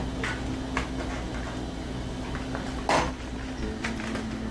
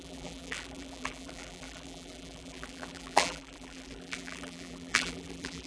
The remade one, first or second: second